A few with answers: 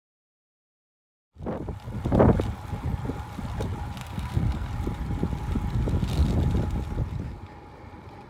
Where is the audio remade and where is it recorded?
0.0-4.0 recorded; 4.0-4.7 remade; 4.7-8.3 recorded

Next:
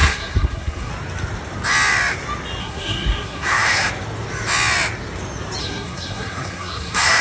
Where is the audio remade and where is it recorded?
0.0-0.9 remade; 0.9-2.6 recorded; 2.6-3.9 remade; 3.9-5.6 recorded; 5.6-7.2 remade

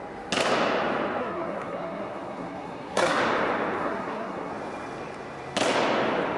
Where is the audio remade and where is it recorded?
0.0-1.2 recorded; 1.2-3.2 remade; 3.2-3.8 recorded; 3.8-4.5 remade; 4.5-6.4 recorded

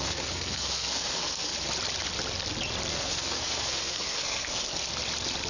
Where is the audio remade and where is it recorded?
0.0-1.5 remade; 1.5-2.9 recorded; 2.9-4.7 remade; 4.7-5.5 recorded

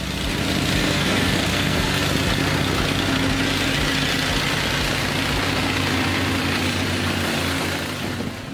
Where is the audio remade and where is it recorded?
0.0-0.8 recorded; 0.8-2.0 remade; 2.0-8.5 recorded

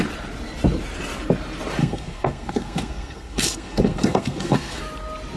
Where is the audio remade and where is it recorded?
0.0-1.8 recorded; 1.8-4.8 remade; 4.8-5.4 recorded

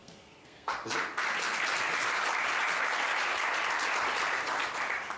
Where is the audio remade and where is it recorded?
0.0-0.7 remade; 0.7-5.2 recorded

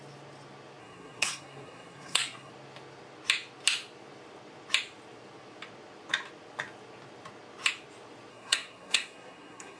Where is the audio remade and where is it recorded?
0.0-0.8 recorded; 0.8-2.5 remade; 2.5-8.3 recorded; 8.3-9.8 remade